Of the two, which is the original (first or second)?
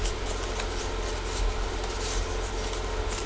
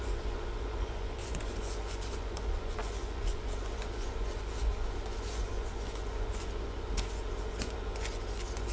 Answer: first